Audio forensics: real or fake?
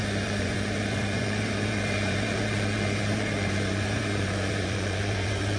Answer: fake